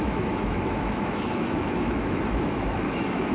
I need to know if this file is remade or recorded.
remade